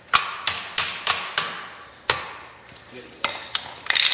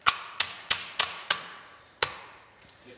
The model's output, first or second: second